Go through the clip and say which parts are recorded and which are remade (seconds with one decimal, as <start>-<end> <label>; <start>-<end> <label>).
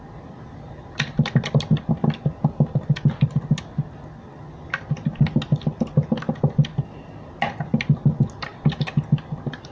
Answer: 0.0-9.7 recorded